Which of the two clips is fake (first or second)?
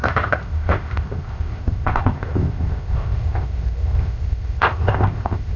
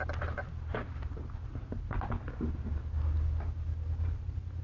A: first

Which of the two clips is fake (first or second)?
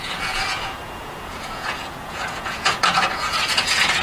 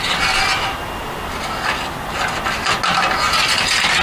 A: first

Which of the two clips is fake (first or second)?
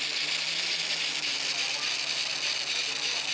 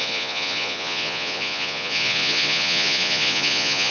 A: second